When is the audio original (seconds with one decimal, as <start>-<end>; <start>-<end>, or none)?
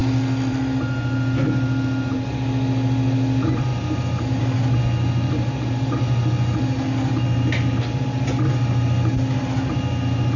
0.0-10.4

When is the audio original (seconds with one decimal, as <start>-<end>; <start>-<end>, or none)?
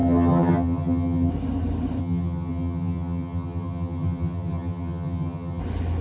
1.3-2.0; 5.6-6.0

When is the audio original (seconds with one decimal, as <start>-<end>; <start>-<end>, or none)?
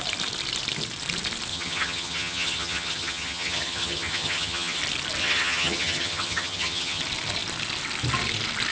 0.0-1.5; 4.8-5.2; 7.0-8.7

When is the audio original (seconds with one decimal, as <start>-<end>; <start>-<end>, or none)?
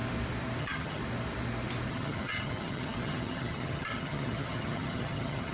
0.0-0.6; 1.0-1.9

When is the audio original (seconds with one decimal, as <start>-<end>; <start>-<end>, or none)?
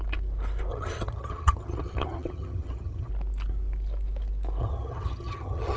0.0-0.7; 3.1-4.6